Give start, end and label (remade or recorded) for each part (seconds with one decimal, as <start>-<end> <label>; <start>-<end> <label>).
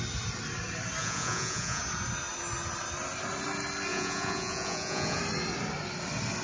0.0-1.0 recorded; 1.0-1.8 remade; 1.8-3.9 recorded; 3.9-5.2 remade; 5.2-6.4 recorded